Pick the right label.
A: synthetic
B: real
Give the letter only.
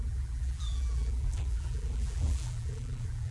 A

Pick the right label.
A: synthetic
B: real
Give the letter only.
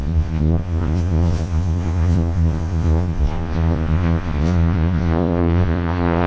A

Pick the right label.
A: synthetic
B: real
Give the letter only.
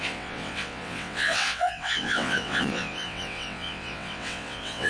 A